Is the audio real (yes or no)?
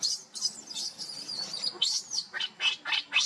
yes